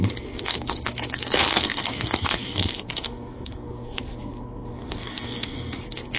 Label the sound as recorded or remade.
remade